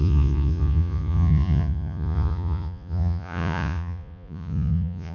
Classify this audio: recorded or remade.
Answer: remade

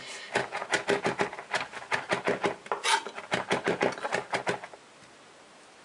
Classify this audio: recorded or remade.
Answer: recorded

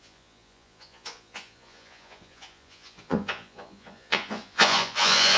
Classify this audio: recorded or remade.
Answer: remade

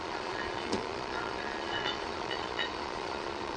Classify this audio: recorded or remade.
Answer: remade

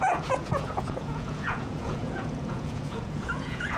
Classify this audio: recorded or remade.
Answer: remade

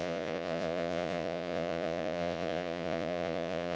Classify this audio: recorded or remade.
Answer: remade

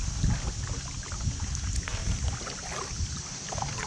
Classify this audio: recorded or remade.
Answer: recorded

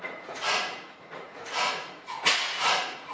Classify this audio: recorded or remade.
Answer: remade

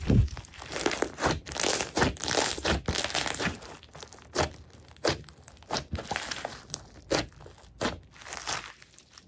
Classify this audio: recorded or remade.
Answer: recorded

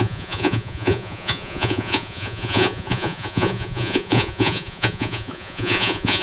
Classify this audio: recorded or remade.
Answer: remade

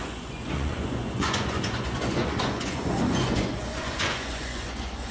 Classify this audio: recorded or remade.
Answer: remade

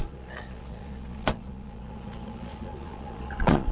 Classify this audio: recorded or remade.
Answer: remade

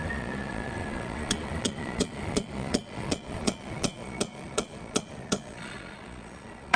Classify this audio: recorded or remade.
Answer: remade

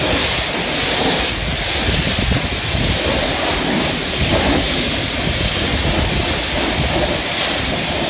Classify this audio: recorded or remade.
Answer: recorded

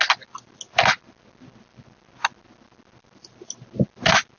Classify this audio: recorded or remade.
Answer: recorded